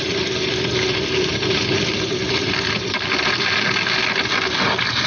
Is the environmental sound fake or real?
real